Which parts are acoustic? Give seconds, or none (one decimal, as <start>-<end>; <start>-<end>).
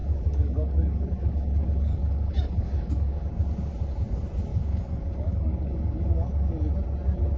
3.3-4.5; 6.7-7.4